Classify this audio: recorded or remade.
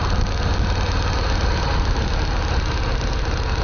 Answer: recorded